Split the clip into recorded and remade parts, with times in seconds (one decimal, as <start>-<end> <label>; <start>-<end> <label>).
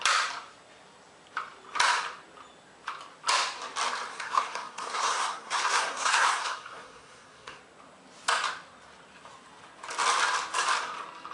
0.0-4.1 recorded; 4.1-7.6 remade; 7.6-11.3 recorded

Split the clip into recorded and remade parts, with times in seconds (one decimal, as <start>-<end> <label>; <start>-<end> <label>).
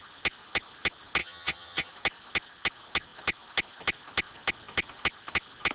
0.0-1.2 recorded; 1.2-1.9 remade; 1.9-5.7 recorded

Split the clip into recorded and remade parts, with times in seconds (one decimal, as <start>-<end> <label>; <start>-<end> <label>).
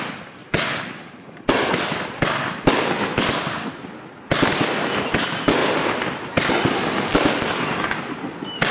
0.0-0.4 recorded; 0.4-2.2 remade; 2.2-8.7 recorded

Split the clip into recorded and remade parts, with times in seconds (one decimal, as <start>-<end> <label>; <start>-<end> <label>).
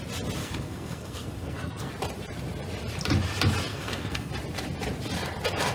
0.0-0.4 recorded; 0.4-1.9 remade; 1.9-3.7 recorded; 3.7-4.3 remade; 4.3-5.7 recorded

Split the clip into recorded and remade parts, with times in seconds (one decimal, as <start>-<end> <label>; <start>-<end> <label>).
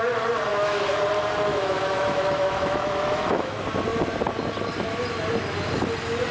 0.0-0.5 recorded; 0.5-1.0 remade; 1.0-1.5 recorded; 1.5-3.5 remade; 3.5-6.3 recorded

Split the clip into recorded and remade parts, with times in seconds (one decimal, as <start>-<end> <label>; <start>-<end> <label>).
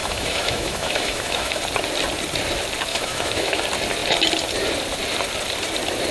0.0-1.6 remade; 1.6-2.9 recorded; 2.9-3.6 remade; 3.6-6.1 recorded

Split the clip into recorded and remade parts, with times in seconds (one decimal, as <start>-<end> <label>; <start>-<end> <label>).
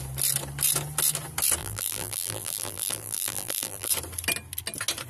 0.0-1.6 recorded; 1.6-3.9 remade; 3.9-5.1 recorded